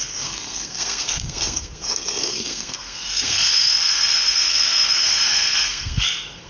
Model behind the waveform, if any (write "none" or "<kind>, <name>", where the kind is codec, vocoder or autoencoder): codec, SNAC